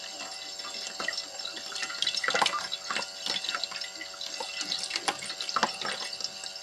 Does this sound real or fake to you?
real